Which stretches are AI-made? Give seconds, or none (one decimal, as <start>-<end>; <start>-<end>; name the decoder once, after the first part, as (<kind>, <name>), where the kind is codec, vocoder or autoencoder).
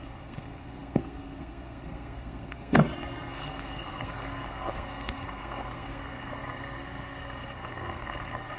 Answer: 0.0-8.6 (codec, SNAC)